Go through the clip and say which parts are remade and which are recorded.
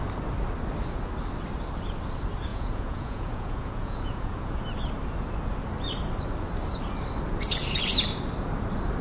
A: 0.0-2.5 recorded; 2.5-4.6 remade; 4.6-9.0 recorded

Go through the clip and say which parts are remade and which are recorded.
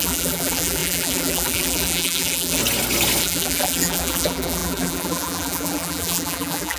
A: 0.0-2.6 remade; 2.6-3.2 recorded; 3.2-6.8 remade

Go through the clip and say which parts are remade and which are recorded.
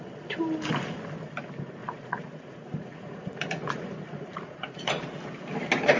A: 0.0-1.8 recorded; 1.8-4.9 remade; 4.9-6.0 recorded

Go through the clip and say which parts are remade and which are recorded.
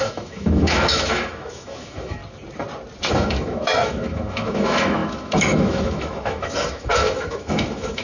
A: 0.0-2.2 remade; 2.2-3.1 recorded; 3.1-8.0 remade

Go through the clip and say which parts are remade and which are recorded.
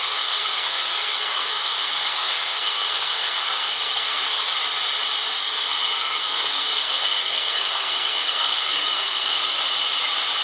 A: 0.0-4.6 remade; 4.6-5.4 recorded; 5.4-9.4 remade; 9.4-10.4 recorded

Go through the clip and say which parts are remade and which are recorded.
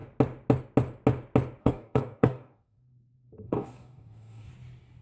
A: 0.0-1.6 recorded; 1.6-4.5 remade; 4.5-5.0 recorded